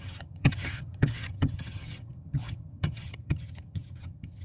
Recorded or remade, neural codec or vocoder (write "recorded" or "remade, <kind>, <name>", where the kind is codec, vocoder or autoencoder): remade, vocoder, HiFi-GAN